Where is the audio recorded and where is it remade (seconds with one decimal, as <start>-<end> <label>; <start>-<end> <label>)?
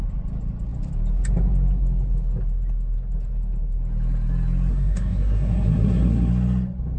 0.0-4.7 recorded; 4.7-6.3 remade; 6.3-7.0 recorded